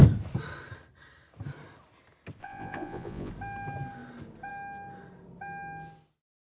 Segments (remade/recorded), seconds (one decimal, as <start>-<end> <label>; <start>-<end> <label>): 0.0-2.4 recorded; 2.4-3.3 remade; 3.3-6.5 recorded